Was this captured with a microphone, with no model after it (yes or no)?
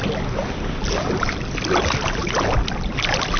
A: yes